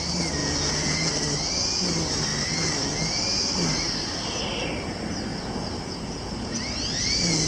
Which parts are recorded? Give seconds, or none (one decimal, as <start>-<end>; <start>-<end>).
0.0-0.4; 1.1-5.3; 6.6-7.5